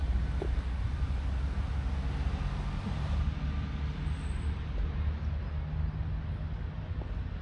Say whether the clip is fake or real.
real